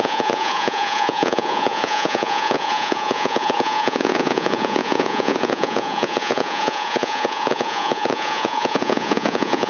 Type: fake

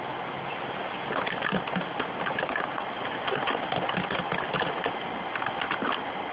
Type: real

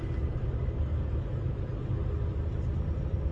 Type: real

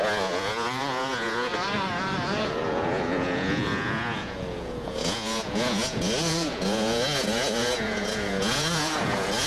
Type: fake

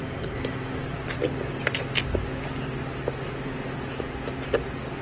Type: real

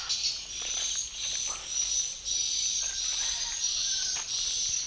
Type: real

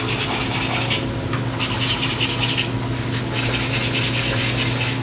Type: real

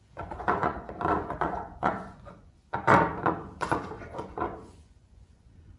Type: fake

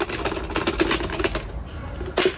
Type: real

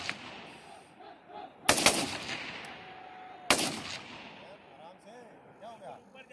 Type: real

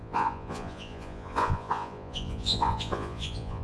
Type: fake